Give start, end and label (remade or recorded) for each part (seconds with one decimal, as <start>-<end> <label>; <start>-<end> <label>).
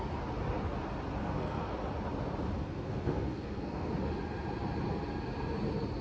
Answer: 0.0-1.2 recorded; 1.2-1.7 remade; 1.7-2.6 recorded; 2.6-3.9 remade; 3.9-6.0 recorded